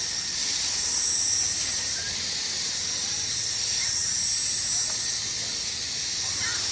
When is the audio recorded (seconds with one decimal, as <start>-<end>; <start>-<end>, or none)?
0.0-6.7